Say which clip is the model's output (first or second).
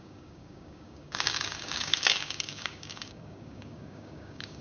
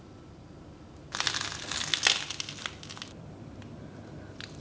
first